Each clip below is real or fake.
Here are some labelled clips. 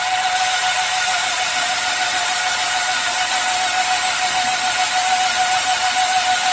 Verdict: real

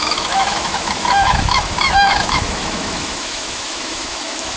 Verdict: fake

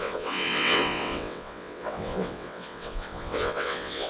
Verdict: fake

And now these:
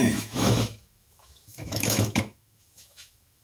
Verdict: fake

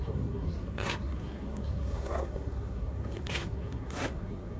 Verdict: fake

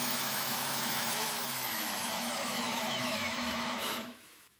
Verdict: fake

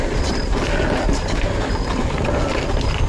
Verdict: real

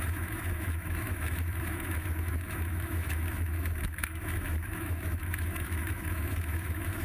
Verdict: fake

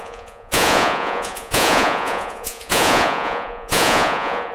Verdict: fake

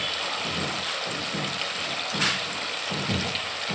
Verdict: real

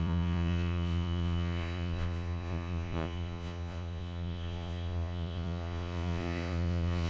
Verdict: fake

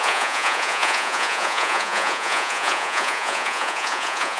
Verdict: fake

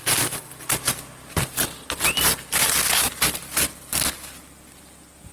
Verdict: real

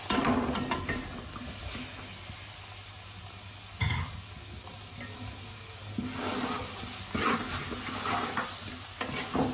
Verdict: real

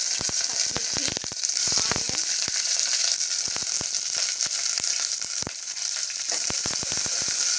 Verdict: real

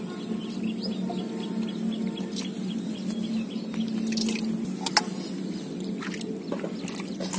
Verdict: real